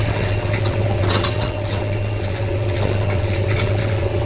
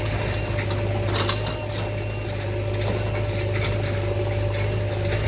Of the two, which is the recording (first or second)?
second